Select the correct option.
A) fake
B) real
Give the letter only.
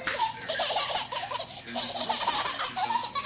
B